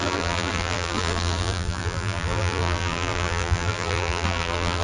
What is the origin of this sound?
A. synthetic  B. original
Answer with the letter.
A